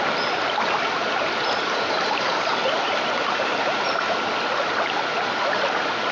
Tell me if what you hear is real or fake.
real